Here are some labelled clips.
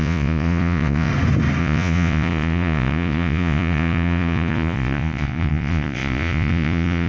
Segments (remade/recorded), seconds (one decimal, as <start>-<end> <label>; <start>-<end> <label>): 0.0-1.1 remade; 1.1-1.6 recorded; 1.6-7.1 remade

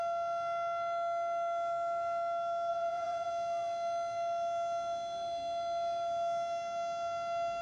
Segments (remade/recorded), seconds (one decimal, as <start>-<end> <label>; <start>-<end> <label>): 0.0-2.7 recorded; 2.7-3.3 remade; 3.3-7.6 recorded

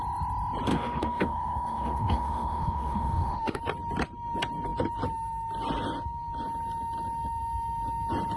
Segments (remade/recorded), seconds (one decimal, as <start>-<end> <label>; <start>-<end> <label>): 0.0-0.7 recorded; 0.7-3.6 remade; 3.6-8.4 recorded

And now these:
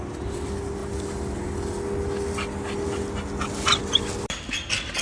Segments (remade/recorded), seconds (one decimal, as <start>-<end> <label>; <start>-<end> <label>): 0.0-5.0 recorded